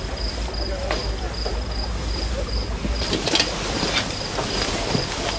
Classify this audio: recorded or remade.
recorded